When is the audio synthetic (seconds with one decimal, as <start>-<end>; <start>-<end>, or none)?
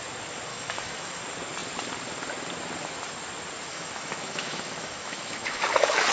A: 0.5-1.2; 3.7-6.1